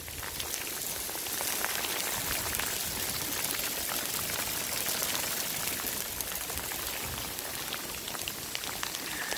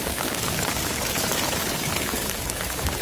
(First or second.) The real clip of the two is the first